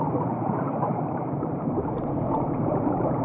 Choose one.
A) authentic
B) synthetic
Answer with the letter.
B